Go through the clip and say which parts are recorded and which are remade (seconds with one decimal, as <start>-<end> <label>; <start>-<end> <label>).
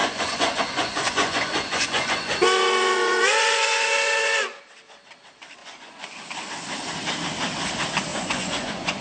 0.0-4.6 remade; 4.6-5.6 recorded; 5.6-6.2 remade; 6.2-8.1 recorded; 8.1-9.0 remade